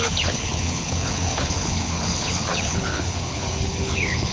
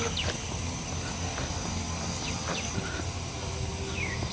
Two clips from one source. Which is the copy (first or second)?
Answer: first